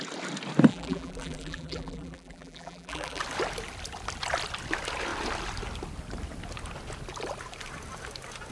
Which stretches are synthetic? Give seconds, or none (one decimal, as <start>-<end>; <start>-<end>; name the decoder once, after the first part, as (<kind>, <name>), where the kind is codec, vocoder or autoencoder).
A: 0.7-3.2 (vocoder, BigVGAN v2)